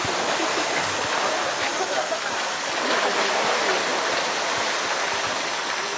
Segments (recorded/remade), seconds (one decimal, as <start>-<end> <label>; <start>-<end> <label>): 0.0-6.0 recorded